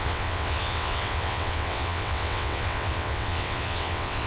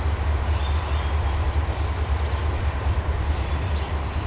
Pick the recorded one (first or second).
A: second